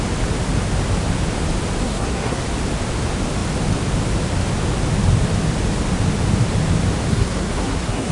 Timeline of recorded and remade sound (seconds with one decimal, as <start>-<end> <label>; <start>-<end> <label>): 0.0-1.8 recorded; 1.8-2.4 remade; 2.4-7.1 recorded; 7.1-8.1 remade